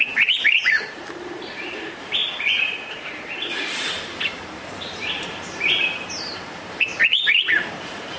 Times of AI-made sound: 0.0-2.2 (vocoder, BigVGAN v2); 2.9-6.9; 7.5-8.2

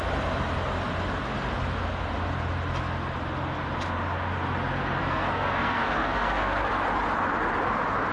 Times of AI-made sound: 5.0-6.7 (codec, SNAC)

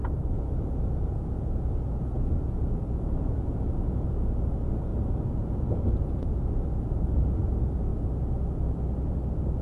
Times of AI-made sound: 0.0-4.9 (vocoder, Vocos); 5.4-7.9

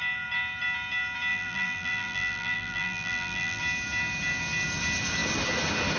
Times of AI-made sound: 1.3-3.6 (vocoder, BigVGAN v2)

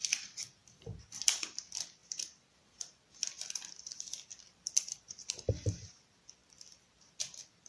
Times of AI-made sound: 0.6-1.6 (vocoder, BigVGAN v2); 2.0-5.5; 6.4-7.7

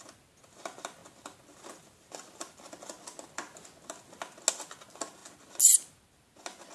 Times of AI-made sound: none